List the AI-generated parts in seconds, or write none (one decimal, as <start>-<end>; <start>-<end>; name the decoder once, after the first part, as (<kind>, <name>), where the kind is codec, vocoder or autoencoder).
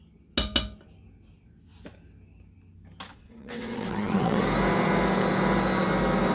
3.1-4.4 (vocoder, WaveNeXt)